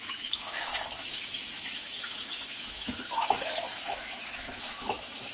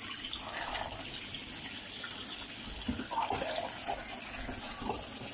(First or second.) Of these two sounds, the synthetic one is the first